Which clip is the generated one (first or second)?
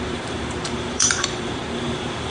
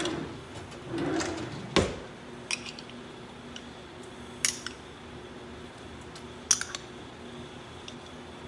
first